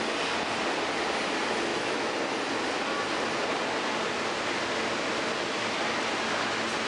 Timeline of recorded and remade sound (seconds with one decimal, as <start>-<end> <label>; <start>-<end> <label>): 0.0-1.7 recorded; 1.7-2.2 remade; 2.2-6.9 recorded